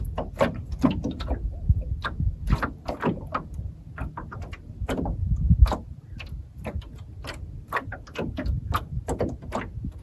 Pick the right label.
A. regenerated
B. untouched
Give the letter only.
B